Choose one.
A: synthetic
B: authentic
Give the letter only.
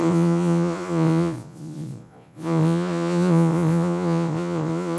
A